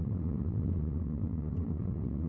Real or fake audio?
fake